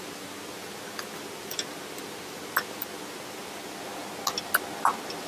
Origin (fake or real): real